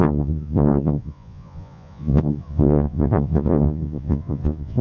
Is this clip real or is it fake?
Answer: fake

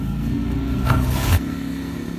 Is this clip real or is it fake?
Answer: fake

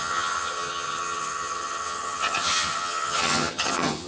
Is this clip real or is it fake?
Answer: fake